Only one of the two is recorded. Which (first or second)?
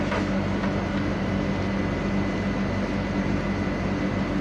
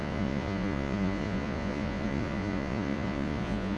first